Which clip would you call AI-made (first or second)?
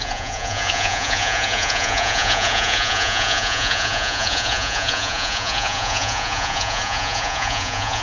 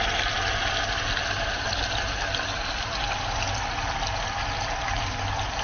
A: first